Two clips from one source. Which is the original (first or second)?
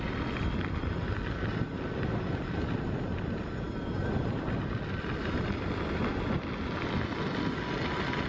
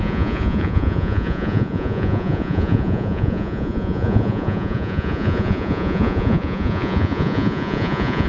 first